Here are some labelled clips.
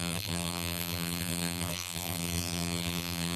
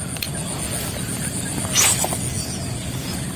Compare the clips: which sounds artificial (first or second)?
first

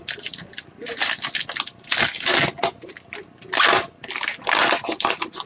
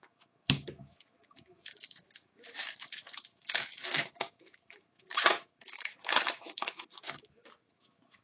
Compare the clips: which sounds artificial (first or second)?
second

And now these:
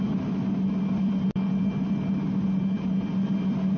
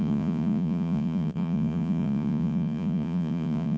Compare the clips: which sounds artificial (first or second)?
second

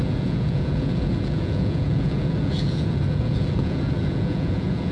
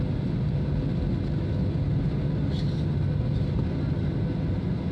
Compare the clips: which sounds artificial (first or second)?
first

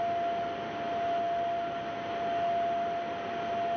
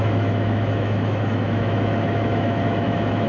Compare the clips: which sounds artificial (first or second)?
second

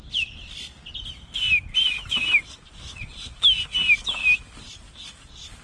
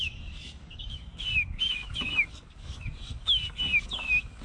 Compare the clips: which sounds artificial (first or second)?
second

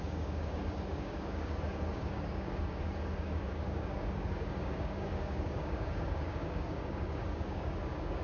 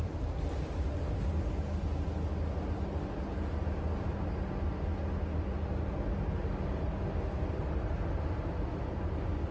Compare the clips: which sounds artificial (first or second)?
first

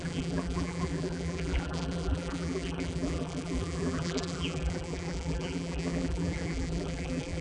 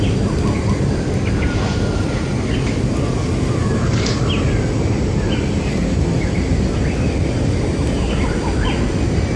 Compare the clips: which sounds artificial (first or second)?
first